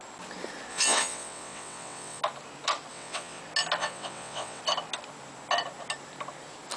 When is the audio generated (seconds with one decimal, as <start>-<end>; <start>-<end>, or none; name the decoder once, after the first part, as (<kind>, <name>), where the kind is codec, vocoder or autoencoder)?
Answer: 0.7-2.2 (vocoder, WaveNeXt); 2.9-3.4; 3.8-4.6